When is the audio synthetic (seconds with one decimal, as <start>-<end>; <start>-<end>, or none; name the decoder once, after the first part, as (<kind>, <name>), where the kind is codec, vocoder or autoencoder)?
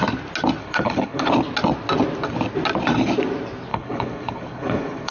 0.6-1.3 (codec, HILCodec); 3.7-5.1